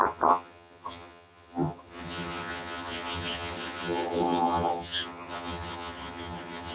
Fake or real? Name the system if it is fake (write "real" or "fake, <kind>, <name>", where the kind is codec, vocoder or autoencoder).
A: fake, vocoder, HiFi-GAN